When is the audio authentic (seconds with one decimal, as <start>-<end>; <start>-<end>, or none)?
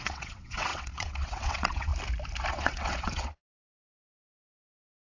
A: 1.9-2.5